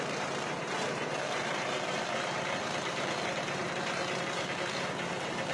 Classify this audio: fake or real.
fake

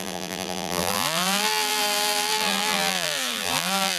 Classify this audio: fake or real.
fake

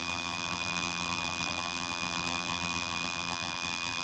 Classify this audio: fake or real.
fake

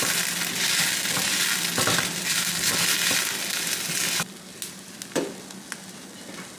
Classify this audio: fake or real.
real